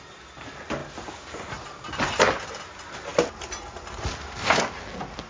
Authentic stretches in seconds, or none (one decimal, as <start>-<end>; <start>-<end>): 0.0-5.3